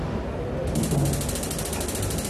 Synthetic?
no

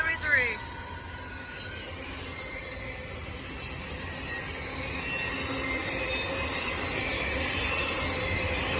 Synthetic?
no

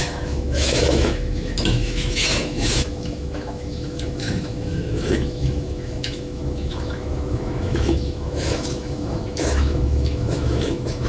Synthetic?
yes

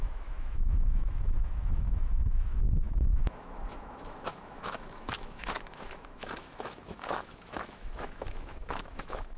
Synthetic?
yes